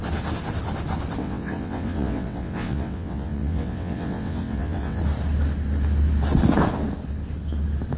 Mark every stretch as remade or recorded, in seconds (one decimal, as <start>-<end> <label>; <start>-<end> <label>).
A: 0.0-1.2 recorded; 1.2-5.0 remade; 5.0-8.0 recorded